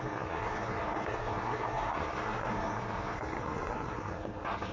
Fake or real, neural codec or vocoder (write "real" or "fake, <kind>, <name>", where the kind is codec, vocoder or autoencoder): fake, codec, SNAC